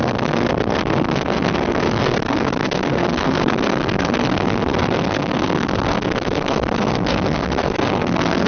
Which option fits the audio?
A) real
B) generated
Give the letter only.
B